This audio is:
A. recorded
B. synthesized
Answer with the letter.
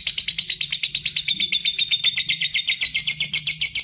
B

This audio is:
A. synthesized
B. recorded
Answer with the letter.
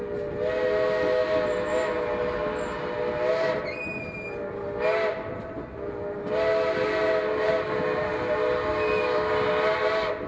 B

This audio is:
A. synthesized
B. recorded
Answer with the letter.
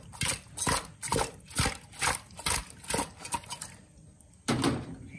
B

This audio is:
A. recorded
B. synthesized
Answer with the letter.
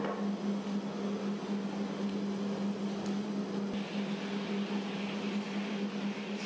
A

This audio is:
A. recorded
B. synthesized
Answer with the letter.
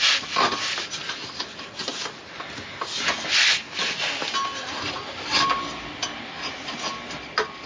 A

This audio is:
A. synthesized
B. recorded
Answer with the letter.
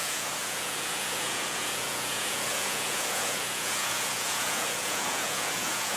A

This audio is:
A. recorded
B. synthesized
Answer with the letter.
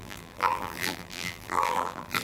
B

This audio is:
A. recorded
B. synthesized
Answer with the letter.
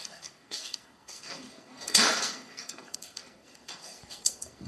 B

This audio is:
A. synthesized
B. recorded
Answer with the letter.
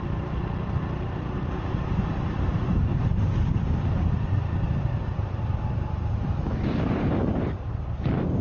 A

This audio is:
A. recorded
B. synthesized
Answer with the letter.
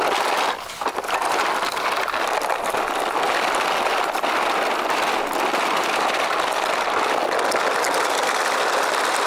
A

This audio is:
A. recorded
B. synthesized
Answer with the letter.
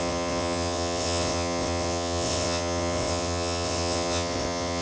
B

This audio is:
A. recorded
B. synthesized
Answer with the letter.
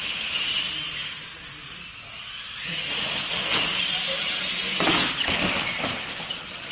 A